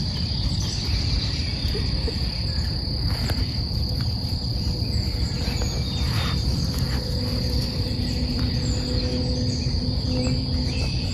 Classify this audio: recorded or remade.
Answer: recorded